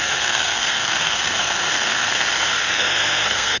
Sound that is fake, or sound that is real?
fake